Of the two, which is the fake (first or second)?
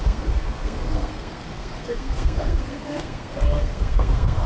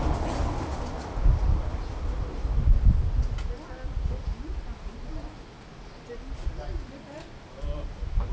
first